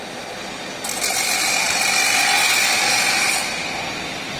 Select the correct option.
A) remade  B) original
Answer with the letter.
B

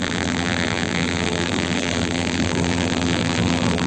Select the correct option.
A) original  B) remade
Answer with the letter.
B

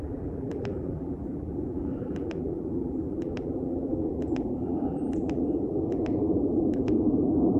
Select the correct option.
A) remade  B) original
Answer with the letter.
A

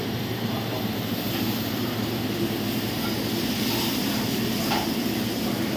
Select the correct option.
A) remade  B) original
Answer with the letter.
A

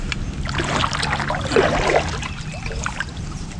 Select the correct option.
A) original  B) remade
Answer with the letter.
B